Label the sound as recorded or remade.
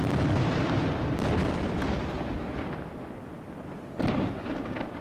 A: recorded